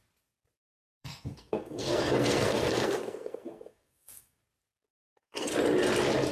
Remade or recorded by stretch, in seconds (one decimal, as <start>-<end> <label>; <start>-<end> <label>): 0.0-0.8 recorded; 0.8-4.4 remade; 4.4-4.9 recorded; 4.9-5.5 remade; 5.5-6.3 recorded